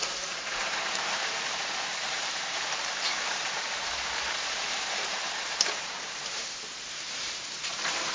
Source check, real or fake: fake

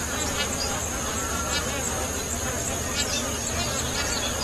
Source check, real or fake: real